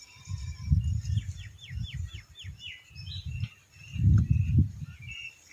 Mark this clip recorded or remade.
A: recorded